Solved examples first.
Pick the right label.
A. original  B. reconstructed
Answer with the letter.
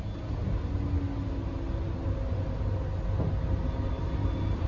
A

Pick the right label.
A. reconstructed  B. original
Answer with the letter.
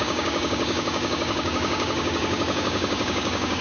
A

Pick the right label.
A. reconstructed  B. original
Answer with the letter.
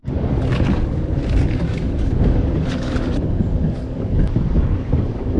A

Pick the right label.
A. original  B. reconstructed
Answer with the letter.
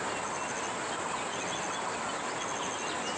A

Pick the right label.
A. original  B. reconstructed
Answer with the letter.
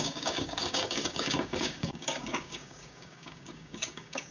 B